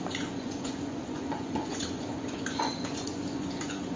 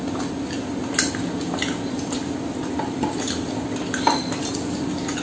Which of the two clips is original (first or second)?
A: second